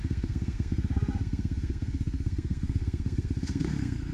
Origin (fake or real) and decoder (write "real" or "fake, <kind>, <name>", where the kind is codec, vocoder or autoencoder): fake, codec, SNAC